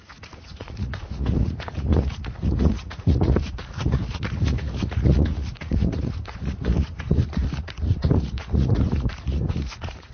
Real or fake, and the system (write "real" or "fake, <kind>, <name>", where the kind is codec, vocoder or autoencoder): fake, vocoder, Vocos